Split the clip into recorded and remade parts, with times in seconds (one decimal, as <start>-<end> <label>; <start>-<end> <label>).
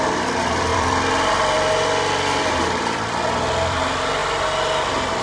0.0-4.2 remade; 4.2-5.2 recorded